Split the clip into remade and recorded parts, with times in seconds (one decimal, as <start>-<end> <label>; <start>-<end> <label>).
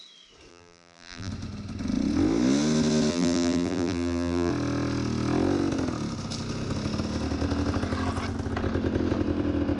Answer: 0.0-0.5 recorded; 0.5-1.3 remade; 1.3-3.1 recorded; 3.1-4.5 remade; 4.5-9.8 recorded